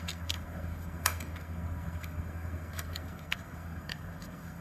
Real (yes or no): no